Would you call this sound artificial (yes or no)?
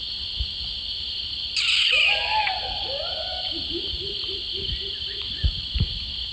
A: no